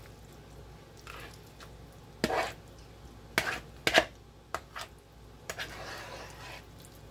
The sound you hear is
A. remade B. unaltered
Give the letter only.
B